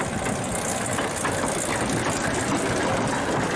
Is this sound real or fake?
real